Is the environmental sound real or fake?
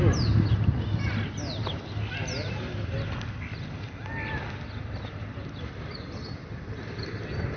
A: real